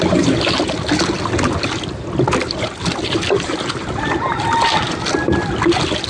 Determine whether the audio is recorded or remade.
recorded